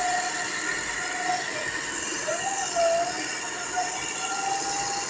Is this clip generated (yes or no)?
no